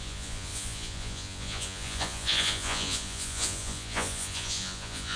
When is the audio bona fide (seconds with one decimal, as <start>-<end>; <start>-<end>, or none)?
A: none

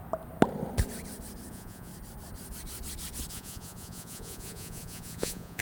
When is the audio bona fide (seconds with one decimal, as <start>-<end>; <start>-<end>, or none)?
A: 0.0-1.5; 1.9-3.3

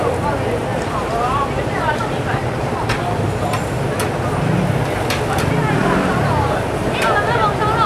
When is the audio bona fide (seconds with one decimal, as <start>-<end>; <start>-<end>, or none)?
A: 0.0-0.7; 1.6-2.0; 4.0-5.8; 6.9-7.9

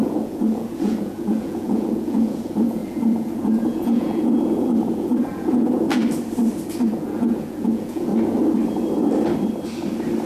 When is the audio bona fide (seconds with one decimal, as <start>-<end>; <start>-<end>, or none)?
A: 6.0-6.9; 8.1-10.3

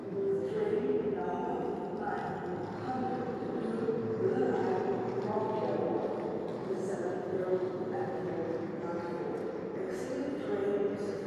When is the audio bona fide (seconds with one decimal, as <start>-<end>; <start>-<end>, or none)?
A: 1.1-11.3

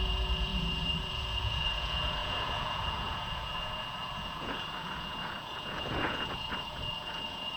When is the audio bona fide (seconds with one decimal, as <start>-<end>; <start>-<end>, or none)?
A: none

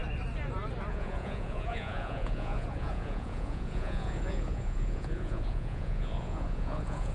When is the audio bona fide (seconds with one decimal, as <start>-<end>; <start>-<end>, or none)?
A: 0.0-0.9

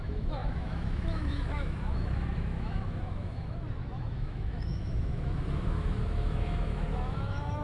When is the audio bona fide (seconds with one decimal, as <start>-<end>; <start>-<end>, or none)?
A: none